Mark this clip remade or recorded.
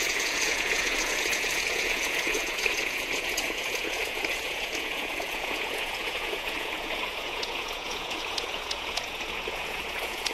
remade